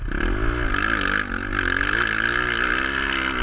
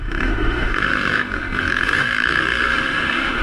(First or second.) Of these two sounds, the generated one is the second